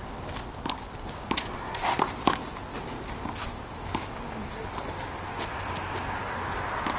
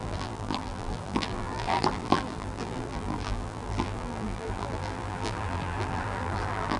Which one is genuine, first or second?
first